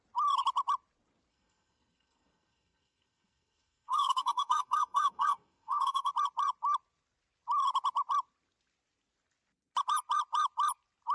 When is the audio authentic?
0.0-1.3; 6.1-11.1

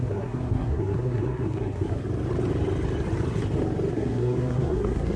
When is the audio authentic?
2.0-3.9

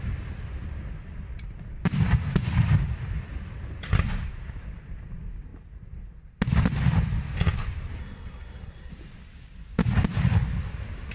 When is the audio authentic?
0.0-8.0; 8.9-11.1

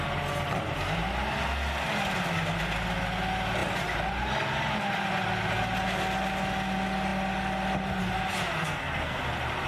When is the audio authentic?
0.0-8.6; 9.2-9.7

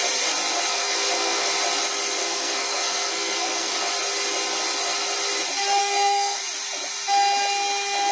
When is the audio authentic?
0.0-0.7; 1.5-2.2; 3.9-5.8; 6.4-8.1

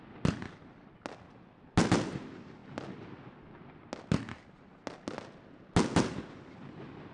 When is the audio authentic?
0.0-7.1

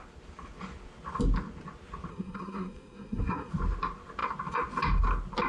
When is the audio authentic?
0.0-2.1; 3.5-5.5